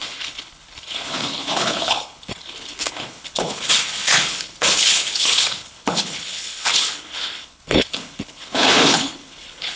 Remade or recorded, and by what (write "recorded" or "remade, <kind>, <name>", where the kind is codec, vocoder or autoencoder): remade, codec, HILCodec